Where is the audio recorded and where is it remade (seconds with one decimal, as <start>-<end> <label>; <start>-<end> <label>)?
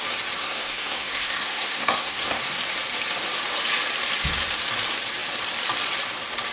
0.0-0.4 recorded; 0.4-2.4 remade; 2.4-6.5 recorded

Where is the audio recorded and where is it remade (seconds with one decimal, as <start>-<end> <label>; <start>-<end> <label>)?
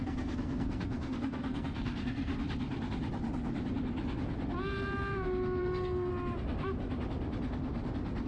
0.0-2.3 remade; 2.3-5.6 recorded; 5.6-6.1 remade; 6.1-8.3 recorded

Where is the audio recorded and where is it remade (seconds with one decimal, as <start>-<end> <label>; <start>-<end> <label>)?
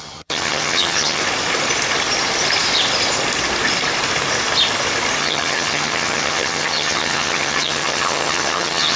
0.0-1.2 remade; 1.2-5.2 recorded; 5.2-9.0 remade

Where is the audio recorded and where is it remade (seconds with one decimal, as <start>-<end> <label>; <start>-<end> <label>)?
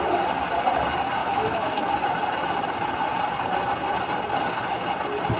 0.0-1.2 recorded; 1.2-1.9 remade; 1.9-5.4 recorded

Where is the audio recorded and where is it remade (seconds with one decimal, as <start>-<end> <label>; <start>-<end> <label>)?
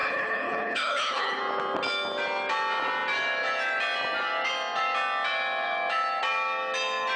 0.0-1.4 remade; 1.4-7.2 recorded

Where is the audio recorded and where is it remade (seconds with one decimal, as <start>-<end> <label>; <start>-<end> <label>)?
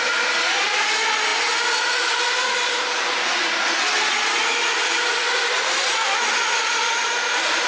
0.0-7.7 recorded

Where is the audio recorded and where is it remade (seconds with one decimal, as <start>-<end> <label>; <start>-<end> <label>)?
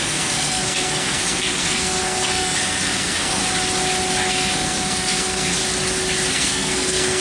0.0-3.4 remade; 3.4-4.3 recorded; 4.3-5.6 remade; 5.6-6.3 recorded; 6.3-7.2 remade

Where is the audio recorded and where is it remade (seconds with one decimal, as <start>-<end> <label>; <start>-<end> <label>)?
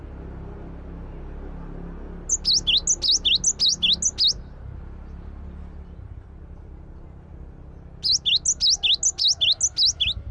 0.0-10.3 recorded